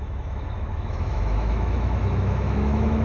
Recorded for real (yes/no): no